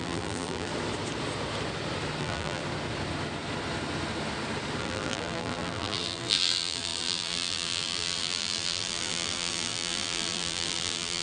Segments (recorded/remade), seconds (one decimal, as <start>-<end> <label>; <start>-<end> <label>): 0.0-0.7 remade; 0.7-2.2 recorded; 2.2-2.6 remade; 2.6-4.8 recorded; 4.8-11.2 remade